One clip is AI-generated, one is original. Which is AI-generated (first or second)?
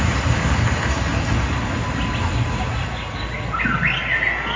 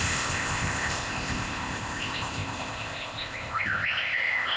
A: second